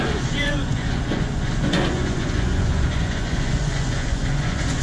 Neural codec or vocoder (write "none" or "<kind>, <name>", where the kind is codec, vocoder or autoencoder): vocoder, Vocos